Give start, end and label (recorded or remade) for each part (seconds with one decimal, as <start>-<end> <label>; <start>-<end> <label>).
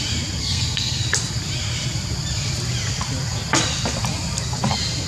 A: 0.0-0.4 recorded; 0.4-1.0 remade; 1.0-5.1 recorded